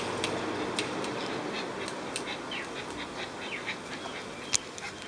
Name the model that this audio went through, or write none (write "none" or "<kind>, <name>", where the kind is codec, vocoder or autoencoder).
none